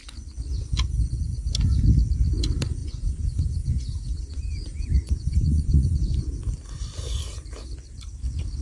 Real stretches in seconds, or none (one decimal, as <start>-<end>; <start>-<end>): 0.0-2.8; 6.2-8.6